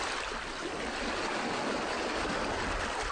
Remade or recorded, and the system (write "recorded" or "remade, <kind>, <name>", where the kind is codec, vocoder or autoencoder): recorded